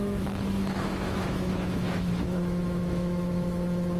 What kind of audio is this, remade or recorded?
remade